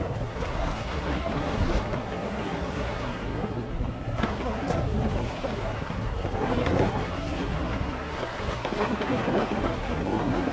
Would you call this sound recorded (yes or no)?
no